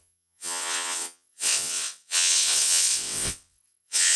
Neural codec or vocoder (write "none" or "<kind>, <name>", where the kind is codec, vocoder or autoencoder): vocoder, WaveNeXt